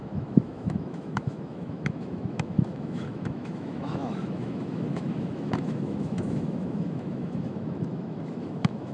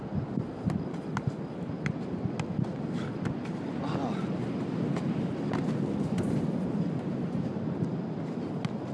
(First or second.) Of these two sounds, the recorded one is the second